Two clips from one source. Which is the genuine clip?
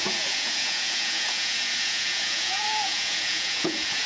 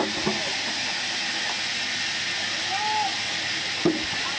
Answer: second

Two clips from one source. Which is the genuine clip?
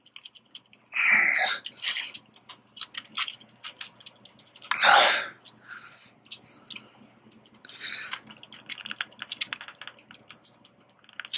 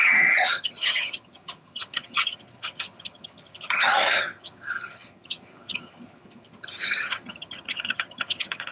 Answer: first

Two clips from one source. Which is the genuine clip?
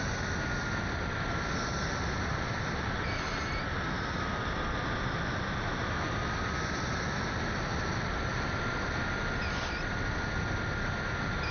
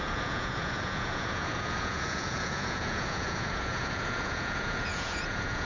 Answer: first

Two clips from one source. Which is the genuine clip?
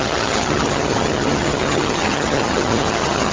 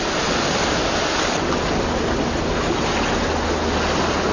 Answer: second